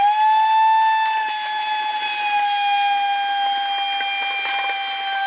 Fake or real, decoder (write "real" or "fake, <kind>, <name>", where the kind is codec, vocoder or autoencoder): real